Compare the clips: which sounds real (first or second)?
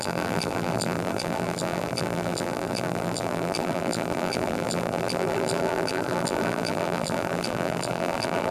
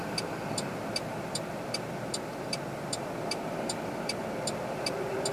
second